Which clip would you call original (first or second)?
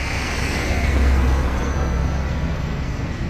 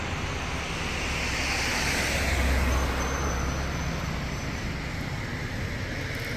second